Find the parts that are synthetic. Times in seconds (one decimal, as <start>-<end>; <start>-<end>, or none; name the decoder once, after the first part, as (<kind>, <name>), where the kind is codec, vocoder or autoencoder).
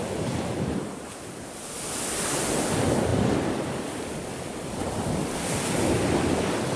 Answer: none